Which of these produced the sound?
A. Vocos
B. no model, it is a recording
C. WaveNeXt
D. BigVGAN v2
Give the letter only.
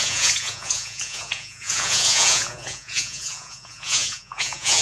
A